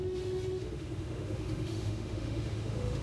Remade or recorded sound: remade